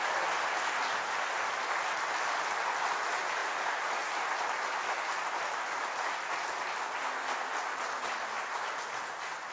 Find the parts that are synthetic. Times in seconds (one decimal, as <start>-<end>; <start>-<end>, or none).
none